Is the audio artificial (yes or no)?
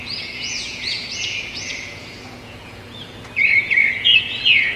yes